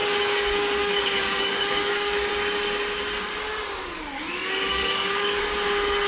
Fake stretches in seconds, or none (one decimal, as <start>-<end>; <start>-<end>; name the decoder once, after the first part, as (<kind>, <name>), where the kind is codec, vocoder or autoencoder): 0.0-2.3 (codec, DAC); 4.4-5.4